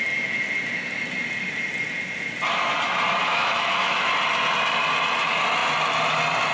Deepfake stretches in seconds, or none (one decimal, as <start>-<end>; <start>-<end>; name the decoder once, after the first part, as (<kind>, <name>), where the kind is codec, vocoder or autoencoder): 3.2-4.1 (autoencoder, DAC-VAE)